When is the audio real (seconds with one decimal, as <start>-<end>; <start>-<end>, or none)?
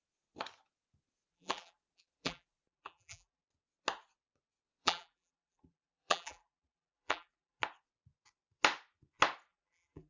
0.0-1.3; 3.4-4.8; 7.6-9.5